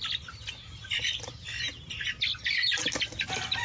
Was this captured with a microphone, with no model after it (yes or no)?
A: yes